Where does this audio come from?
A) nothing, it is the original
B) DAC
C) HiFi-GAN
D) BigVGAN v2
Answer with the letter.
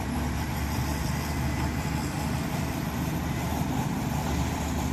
D